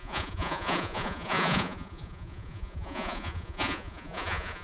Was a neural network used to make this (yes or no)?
yes